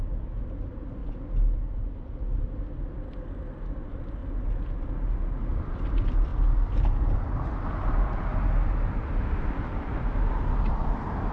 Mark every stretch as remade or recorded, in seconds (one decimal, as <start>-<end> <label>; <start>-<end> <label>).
0.0-1.0 remade; 1.0-2.4 recorded; 2.4-4.2 remade; 4.2-5.2 recorded; 5.2-6.3 remade; 6.3-7.9 recorded; 7.9-8.3 remade; 8.3-9.1 recorded; 9.1-11.3 remade